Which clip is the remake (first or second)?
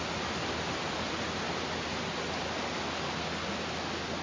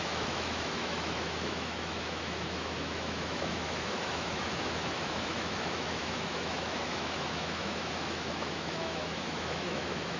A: second